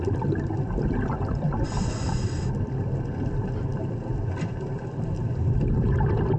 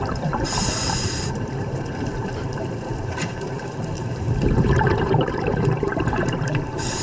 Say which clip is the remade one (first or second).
second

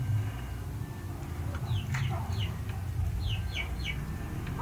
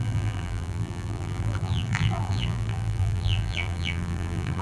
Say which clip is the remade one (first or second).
second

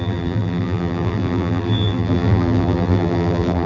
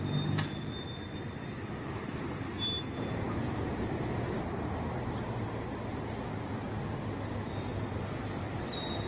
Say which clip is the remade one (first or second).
first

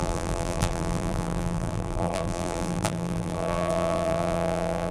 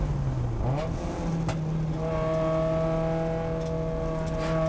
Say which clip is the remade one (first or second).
first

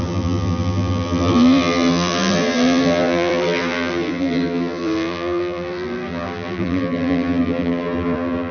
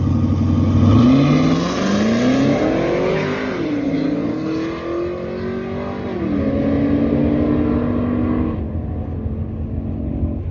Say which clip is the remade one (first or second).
first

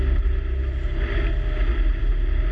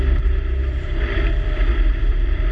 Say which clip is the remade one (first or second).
second